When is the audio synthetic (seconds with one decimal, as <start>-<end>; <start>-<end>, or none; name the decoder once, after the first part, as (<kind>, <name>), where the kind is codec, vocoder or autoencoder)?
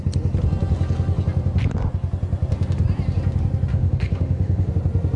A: 3.7-4.7 (autoencoder, DAC-VAE)